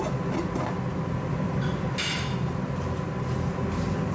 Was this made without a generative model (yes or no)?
yes